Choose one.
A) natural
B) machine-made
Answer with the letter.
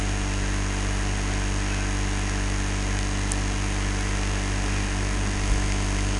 A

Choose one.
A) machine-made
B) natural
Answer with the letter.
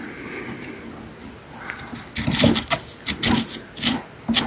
B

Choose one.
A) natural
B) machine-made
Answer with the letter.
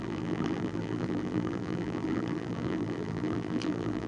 B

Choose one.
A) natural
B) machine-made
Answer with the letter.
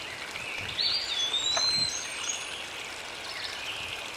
A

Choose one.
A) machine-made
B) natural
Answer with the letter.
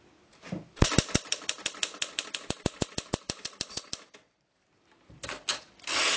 A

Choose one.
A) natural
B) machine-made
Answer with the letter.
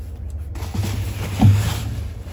A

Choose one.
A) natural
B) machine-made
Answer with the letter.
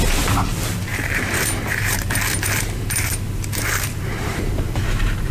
B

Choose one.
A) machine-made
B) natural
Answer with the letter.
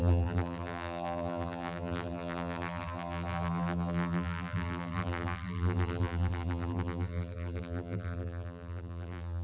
A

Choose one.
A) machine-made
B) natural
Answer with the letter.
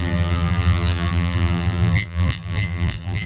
A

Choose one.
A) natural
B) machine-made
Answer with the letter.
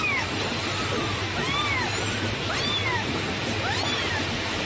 B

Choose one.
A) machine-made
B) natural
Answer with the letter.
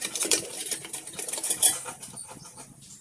A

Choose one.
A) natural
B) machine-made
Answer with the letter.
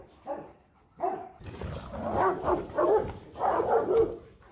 A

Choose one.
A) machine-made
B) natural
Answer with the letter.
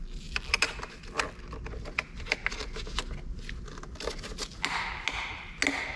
B